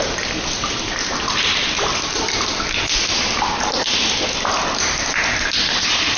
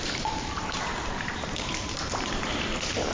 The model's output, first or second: second